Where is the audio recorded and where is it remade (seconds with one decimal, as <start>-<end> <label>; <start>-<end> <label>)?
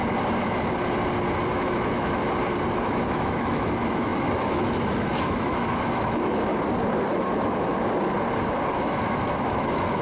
0.0-1.5 recorded; 1.5-2.2 remade; 2.2-2.8 recorded; 2.8-6.5 remade; 6.5-8.8 recorded; 8.8-10.0 remade